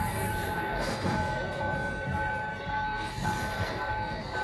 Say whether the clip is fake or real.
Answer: fake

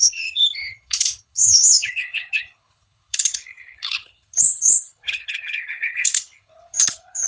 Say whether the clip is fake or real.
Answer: fake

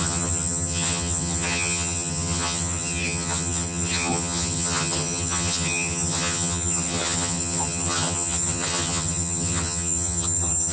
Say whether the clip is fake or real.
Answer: fake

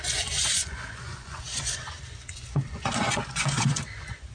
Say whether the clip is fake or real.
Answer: fake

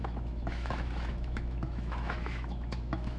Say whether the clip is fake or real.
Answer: fake